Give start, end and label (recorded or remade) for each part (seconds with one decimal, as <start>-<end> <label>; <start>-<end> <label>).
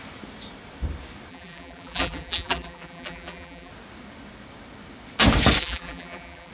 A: 0.0-1.3 recorded; 1.3-3.7 remade; 3.7-5.6 recorded; 5.6-6.5 remade